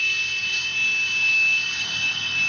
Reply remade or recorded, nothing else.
remade